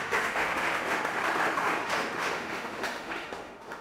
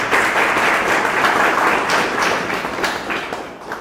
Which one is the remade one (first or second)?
first